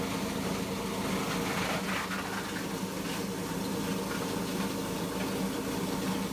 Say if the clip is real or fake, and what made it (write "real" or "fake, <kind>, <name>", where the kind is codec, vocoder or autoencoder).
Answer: real